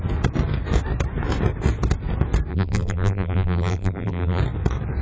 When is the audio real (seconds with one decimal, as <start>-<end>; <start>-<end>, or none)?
0.0-2.5; 4.4-5.0